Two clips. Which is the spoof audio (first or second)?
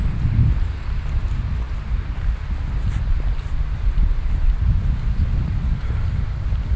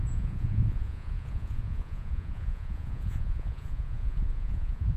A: second